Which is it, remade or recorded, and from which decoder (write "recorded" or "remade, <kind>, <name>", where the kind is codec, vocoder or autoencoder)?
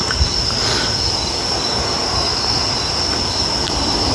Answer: recorded